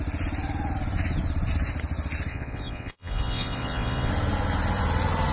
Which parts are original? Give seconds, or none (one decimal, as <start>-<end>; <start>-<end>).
0.0-2.3; 4.1-5.3